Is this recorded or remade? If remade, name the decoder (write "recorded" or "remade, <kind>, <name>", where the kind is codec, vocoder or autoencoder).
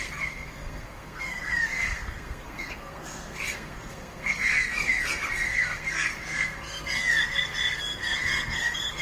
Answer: remade, codec, SNAC